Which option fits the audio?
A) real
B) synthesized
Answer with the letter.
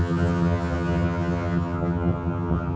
B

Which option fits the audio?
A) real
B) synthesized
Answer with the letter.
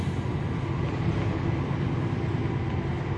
A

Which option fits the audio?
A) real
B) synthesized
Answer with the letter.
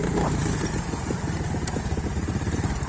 B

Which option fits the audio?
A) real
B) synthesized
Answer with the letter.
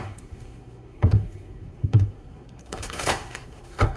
B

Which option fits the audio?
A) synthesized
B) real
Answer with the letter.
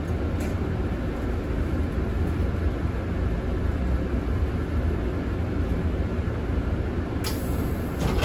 B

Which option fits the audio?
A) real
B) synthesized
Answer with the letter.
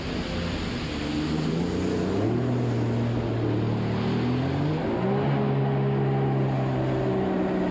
A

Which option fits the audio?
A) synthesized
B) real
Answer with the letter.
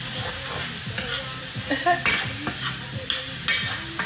B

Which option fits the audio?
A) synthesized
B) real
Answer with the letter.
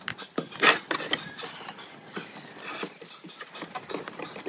B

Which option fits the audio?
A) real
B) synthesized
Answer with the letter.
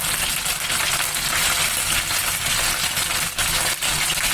A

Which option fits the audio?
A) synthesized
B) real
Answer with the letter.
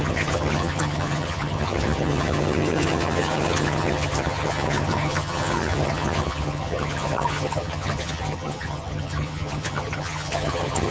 A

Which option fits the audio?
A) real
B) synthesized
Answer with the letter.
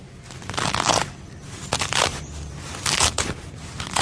A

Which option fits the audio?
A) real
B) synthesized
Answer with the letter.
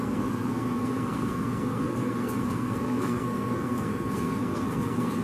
B